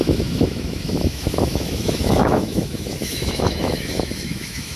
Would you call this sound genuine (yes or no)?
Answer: no